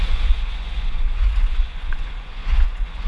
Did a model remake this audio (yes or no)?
yes